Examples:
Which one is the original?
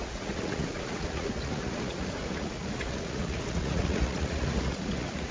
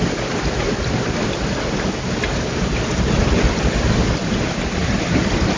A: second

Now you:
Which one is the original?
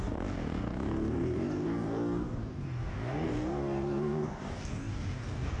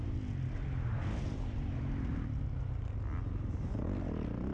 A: second